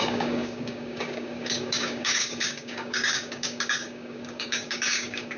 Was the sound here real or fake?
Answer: fake